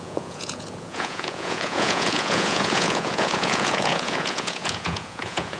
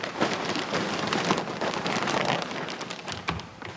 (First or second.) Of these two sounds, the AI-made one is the first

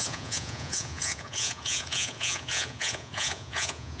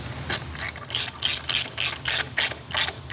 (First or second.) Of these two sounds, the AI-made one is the first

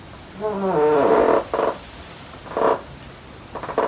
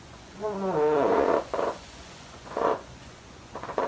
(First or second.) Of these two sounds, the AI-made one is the second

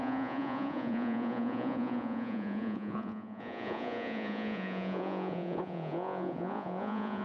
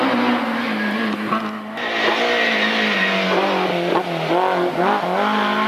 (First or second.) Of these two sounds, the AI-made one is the first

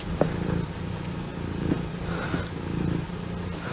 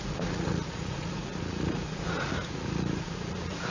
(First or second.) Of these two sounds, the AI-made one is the second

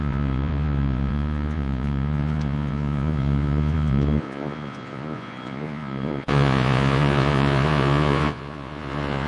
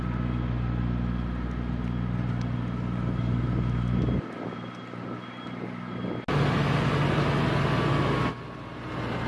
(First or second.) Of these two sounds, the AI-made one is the first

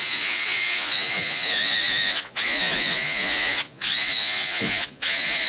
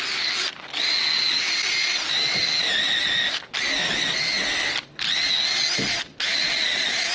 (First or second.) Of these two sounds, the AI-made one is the first